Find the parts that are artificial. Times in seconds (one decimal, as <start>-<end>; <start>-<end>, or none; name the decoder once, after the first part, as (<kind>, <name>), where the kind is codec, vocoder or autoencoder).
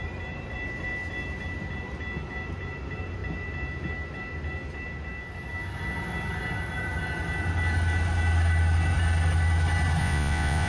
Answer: 10.0-10.7 (vocoder, Vocos)